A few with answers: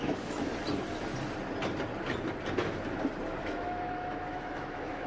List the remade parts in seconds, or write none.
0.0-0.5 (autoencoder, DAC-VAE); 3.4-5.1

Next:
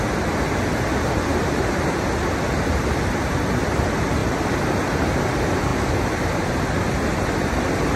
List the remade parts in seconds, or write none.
none

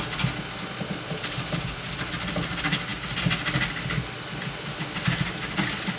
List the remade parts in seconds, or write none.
none

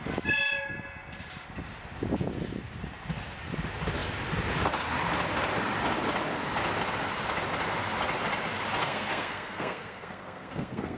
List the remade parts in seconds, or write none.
8.8-11.0 (codec, SNAC)